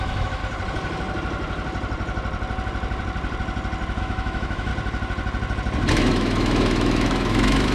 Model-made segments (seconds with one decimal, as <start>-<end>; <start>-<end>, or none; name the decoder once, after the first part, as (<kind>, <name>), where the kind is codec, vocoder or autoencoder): 0.0-0.4 (autoencoder, DAC-VAE); 4.0-4.7; 5.9-7.7